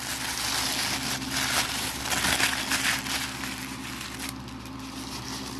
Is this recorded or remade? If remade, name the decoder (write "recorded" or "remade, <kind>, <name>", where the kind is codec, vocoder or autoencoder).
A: recorded